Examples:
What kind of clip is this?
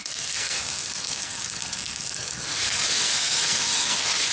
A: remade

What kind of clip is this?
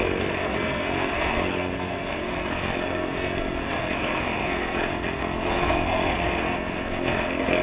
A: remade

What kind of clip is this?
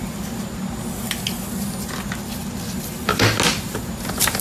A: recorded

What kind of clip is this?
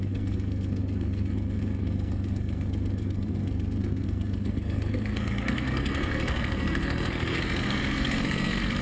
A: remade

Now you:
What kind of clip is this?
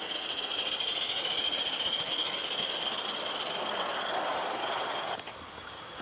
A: recorded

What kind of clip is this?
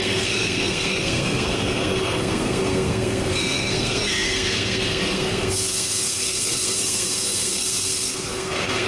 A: remade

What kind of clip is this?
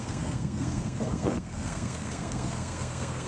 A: remade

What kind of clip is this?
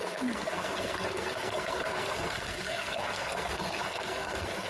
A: remade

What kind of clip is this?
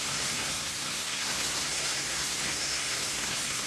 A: remade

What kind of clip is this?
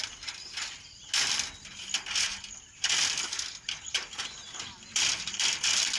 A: recorded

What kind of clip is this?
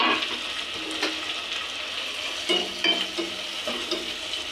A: recorded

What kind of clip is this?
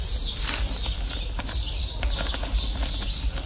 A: recorded